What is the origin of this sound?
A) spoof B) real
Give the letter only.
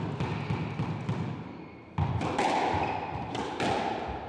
B